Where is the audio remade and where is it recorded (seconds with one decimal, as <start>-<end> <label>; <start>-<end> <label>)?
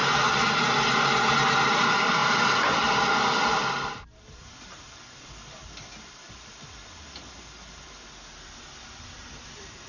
0.0-1.7 recorded; 1.7-9.9 remade